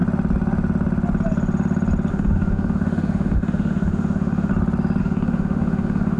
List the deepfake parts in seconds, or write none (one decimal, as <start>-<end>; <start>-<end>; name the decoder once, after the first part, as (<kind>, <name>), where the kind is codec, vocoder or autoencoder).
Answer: 2.1-4.5 (autoencoder, DAC-VAE); 5.0-6.2